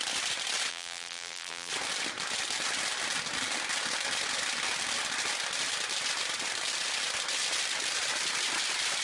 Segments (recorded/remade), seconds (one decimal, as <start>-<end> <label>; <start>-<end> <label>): 0.0-0.7 recorded; 0.7-1.7 remade; 1.7-9.0 recorded